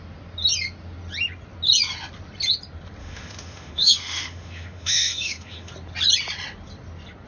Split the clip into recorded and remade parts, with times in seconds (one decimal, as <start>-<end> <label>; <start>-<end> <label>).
0.0-3.0 recorded; 3.0-5.7 remade; 5.7-7.3 recorded